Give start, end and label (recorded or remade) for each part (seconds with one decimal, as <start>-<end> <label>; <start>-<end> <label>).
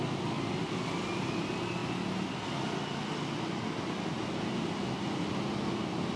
0.0-6.2 recorded